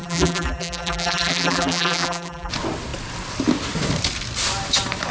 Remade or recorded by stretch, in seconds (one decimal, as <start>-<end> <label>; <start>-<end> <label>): 0.0-2.5 remade; 2.5-5.1 recorded